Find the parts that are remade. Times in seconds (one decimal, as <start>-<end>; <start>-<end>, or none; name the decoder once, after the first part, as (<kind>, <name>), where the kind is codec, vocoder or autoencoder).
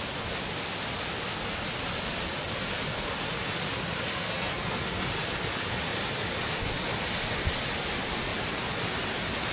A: 4.1-4.9 (codec, SNAC)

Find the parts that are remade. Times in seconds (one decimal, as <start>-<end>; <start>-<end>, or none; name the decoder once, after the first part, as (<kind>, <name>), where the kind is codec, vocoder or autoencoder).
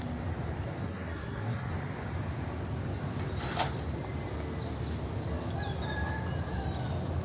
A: 0.8-1.7 (codec, SNAC)